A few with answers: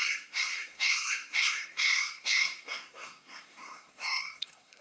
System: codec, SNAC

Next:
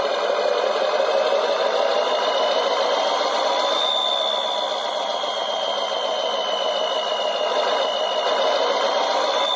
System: none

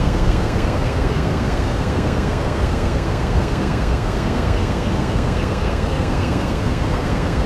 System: codec, SNAC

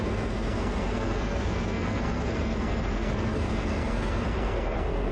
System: codec, SNAC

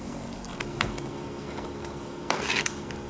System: codec, SNAC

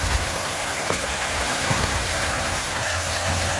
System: codec, SNAC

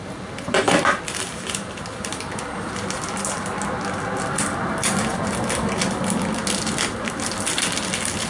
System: none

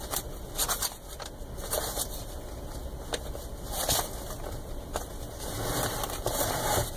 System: none